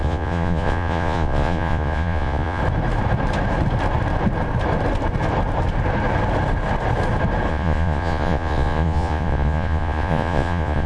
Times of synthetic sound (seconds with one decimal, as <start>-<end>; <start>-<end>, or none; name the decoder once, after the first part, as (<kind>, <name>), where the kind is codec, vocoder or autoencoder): 0.0-2.6 (vocoder, Vocos); 7.5-10.9